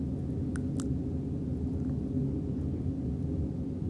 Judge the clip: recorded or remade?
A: recorded